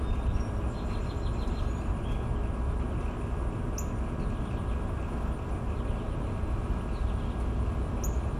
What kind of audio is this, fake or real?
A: real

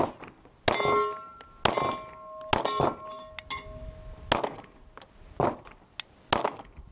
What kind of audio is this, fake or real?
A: real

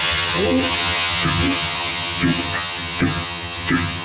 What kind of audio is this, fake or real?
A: fake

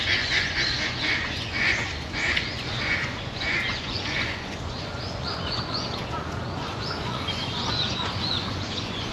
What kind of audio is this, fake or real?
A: fake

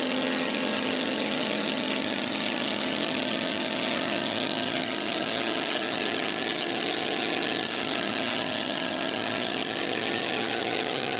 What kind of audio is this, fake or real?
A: fake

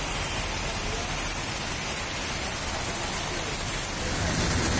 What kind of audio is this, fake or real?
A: real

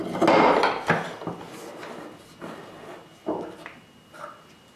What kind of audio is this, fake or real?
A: real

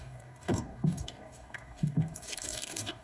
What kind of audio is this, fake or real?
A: fake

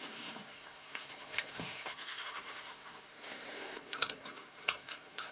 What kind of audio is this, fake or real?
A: fake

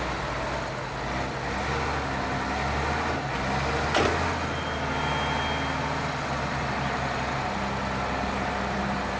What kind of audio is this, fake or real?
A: real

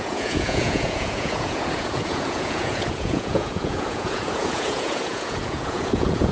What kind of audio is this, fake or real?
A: fake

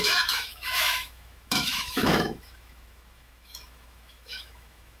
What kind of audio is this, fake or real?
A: fake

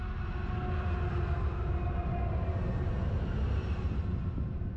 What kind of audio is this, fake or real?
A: real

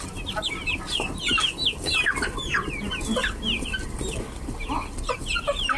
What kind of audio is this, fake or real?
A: real